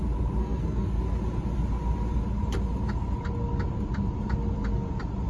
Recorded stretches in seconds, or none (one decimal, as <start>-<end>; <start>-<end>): 0.0-0.4; 1.0-5.3